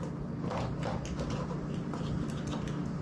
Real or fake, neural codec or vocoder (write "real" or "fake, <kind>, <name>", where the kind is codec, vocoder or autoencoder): real